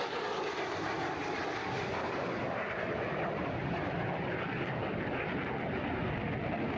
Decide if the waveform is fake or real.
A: real